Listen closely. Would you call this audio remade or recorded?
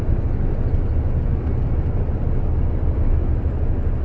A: recorded